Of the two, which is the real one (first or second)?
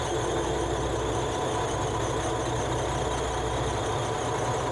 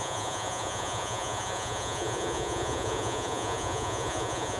first